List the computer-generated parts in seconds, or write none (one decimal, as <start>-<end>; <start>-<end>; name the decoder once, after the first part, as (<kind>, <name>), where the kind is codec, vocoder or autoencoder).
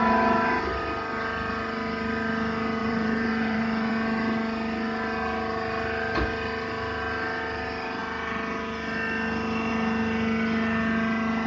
2.8-3.9 (vocoder, BigVGAN v2)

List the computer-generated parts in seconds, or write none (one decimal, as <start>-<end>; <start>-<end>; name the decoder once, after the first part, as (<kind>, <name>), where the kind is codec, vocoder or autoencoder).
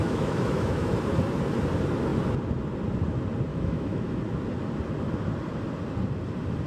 0.0-0.9 (autoencoder, DAC-VAE); 3.5-4.2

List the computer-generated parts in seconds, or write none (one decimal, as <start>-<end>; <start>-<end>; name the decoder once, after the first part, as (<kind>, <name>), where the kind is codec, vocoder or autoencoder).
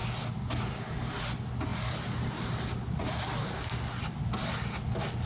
none